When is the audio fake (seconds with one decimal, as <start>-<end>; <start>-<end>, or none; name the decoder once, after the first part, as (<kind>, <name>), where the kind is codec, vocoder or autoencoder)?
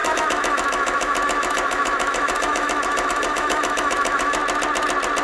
0.0-4.4 (autoencoder, DAC-VAE)